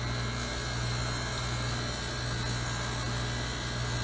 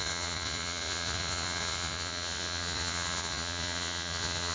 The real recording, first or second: first